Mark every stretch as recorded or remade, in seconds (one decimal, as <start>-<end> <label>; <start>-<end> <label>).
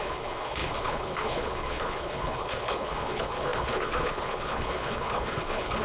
0.0-5.8 remade